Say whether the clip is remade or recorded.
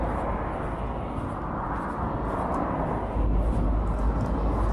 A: recorded